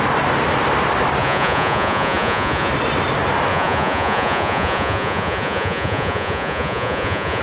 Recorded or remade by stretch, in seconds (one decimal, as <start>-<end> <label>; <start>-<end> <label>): 0.0-1.2 recorded; 1.2-2.7 remade; 2.7-3.5 recorded; 3.5-7.4 remade